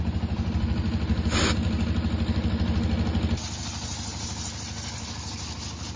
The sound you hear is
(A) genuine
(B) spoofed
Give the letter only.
A